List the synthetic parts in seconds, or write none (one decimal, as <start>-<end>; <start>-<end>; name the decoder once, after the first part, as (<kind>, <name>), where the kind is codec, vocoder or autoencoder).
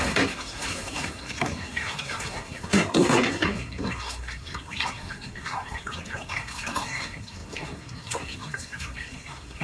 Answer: 0.0-9.6 (codec, SNAC)